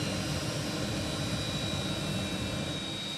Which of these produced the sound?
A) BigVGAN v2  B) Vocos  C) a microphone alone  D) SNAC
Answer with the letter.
C